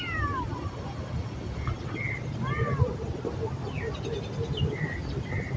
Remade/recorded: recorded